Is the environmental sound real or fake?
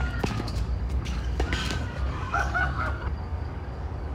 fake